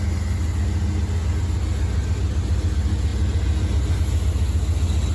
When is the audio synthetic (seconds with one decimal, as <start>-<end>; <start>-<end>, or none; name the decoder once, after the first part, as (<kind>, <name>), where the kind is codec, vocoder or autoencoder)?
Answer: none